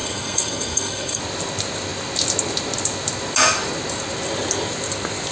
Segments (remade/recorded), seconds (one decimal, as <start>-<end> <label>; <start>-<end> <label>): 0.0-1.2 remade; 1.2-5.3 recorded